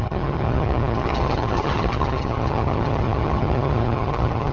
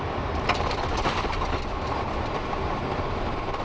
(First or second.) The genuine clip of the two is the second